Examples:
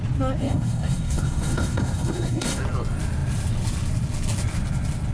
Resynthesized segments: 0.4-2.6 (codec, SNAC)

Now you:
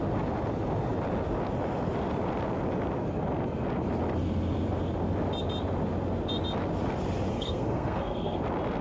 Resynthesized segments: 7.3-8.4 (codec, SNAC)

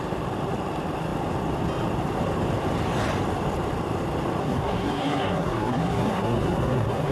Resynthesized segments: 4.4-7.1 (codec, SNAC)

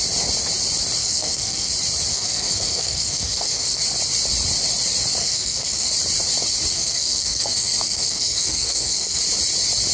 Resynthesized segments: 1.0-1.7 (codec, SNAC); 2.1-3.8; 5.2-5.9; 6.7-9.2

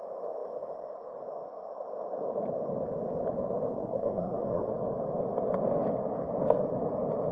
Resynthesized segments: 3.7-4.7 (codec, SNAC)

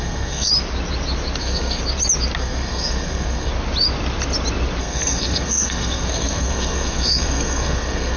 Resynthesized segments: 0.0-0.5 (codec, SNAC); 1.4-1.8; 2.4-3.5; 4.8-8.2